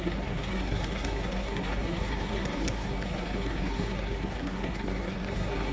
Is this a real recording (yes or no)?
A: no